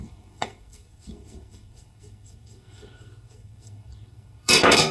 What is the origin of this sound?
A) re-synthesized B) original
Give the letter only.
A